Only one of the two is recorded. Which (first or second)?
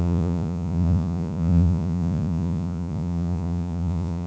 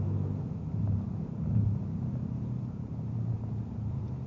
second